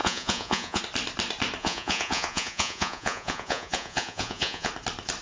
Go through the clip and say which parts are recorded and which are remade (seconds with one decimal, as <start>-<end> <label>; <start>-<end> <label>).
0.0-0.8 remade; 0.8-1.6 recorded; 1.6-4.7 remade; 4.7-5.2 recorded